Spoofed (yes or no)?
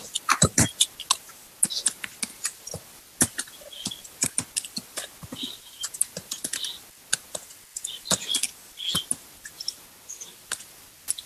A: no